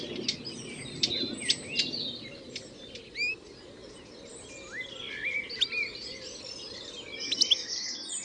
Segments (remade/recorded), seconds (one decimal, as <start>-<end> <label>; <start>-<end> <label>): 0.0-8.2 recorded